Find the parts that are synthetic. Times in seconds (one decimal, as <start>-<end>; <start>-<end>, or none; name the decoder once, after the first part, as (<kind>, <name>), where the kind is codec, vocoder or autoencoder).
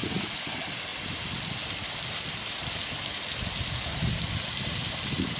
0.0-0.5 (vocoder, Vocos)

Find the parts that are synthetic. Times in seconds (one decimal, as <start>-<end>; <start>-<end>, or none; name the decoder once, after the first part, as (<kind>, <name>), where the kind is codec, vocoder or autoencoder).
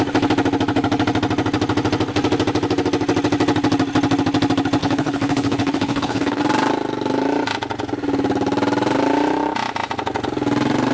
4.8-6.4 (codec, HILCodec)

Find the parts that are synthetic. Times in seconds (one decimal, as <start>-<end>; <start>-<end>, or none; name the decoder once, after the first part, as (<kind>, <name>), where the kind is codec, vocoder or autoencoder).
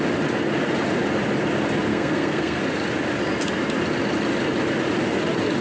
1.9-2.6 (codec, SNAC)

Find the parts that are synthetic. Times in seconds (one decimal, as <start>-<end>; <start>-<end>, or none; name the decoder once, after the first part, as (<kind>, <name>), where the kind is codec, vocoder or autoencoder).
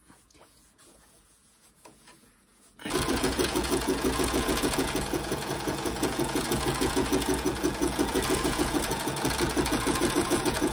0.0-10.7 (vocoder, Vocos)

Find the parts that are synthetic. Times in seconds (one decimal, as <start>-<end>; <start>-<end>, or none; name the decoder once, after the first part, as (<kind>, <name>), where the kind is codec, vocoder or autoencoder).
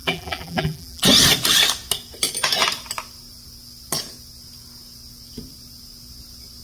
0.0-1.0 (vocoder, BigVGAN v2)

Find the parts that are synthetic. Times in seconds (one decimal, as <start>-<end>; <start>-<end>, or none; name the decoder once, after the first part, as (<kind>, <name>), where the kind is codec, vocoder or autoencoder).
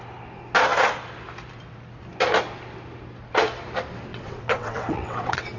4.1-5.6 (vocoder, WaveNeXt)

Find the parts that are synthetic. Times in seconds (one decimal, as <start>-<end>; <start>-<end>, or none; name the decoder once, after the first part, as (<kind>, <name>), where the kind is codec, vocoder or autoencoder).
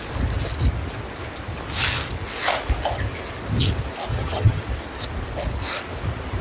4.1-4.6 (vocoder, HiFi-GAN)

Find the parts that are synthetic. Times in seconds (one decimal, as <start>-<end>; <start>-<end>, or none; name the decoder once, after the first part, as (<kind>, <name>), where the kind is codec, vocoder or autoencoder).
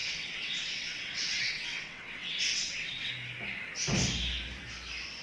0.0-3.1 (vocoder, WaveNeXt)